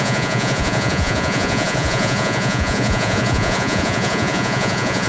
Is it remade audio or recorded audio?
remade